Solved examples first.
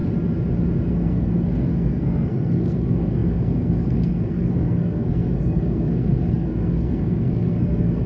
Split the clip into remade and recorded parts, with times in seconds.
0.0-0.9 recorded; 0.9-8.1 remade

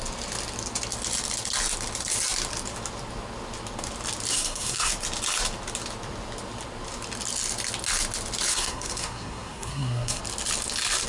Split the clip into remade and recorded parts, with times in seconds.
0.0-4.3 recorded; 4.3-4.9 remade; 4.9-8.5 recorded; 8.5-10.2 remade; 10.2-11.1 recorded

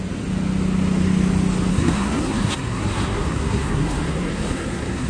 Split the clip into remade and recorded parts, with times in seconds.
0.0-1.7 recorded; 1.7-5.1 remade

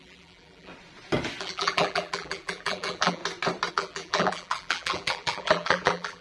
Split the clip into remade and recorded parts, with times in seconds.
0.0-0.7 remade; 0.7-1.4 recorded; 1.4-3.2 remade; 3.2-3.7 recorded; 3.7-6.2 remade

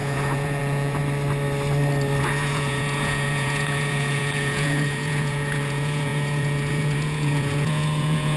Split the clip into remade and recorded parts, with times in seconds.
0.0-1.0 remade; 1.0-2.2 recorded; 2.2-8.4 remade

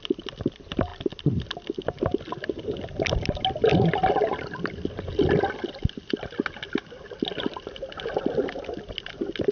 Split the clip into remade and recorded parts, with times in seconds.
0.0-9.5 recorded

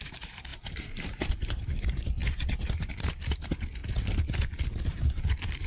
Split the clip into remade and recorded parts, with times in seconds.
0.0-3.8 remade; 3.8-4.9 recorded; 4.9-5.7 remade

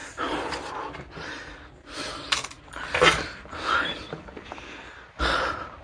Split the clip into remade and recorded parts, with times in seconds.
0.0-5.8 recorded